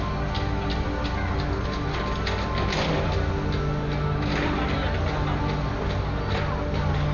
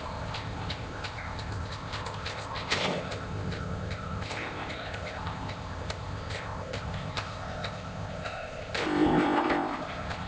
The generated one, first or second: second